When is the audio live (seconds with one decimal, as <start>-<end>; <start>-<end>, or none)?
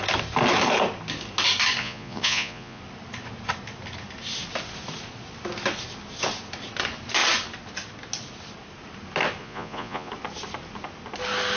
0.0-1.8; 2.8-9.4; 10.1-11.6